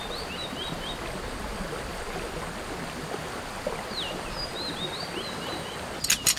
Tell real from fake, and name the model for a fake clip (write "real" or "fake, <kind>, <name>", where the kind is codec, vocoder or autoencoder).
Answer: real